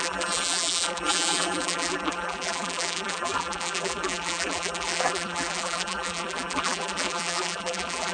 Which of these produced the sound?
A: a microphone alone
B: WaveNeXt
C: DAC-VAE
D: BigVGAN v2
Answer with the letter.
D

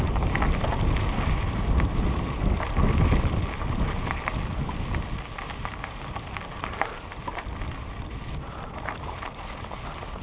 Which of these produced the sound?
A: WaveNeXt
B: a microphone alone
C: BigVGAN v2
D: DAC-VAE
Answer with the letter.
B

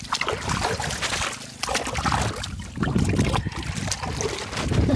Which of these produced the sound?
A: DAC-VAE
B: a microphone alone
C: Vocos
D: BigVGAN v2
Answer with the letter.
B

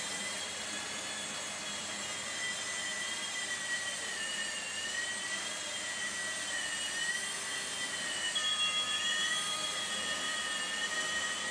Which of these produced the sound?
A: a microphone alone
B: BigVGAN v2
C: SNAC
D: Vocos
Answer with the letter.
B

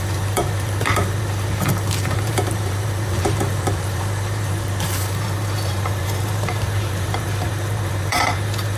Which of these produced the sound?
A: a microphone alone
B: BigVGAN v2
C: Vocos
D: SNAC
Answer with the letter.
B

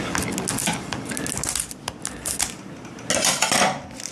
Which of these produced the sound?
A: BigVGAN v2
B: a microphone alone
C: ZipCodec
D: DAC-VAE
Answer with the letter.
B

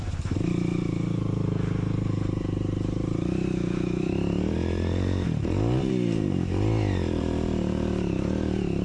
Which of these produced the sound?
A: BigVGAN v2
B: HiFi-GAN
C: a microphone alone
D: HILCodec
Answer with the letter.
A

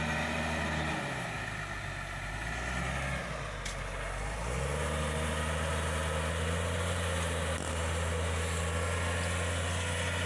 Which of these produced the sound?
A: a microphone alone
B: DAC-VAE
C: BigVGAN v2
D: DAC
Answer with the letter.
A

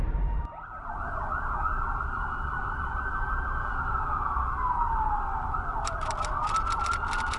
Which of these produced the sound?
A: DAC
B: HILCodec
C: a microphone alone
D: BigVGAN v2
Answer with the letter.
D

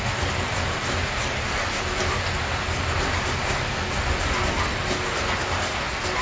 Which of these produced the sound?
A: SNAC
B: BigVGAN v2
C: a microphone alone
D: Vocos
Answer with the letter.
C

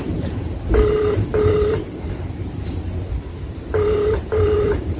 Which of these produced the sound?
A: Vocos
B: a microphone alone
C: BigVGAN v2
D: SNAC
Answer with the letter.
C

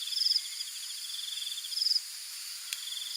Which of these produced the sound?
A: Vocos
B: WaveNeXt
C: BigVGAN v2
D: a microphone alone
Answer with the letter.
C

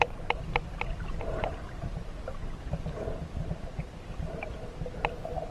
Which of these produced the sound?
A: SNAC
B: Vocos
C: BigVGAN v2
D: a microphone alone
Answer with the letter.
D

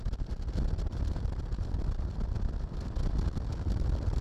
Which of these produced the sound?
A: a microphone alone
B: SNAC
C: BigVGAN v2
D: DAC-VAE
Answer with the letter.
A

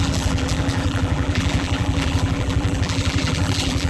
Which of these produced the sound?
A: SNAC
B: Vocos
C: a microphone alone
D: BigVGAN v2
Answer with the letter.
D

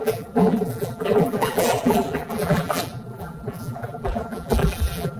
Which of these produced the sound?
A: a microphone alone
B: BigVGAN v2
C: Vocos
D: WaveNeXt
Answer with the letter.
B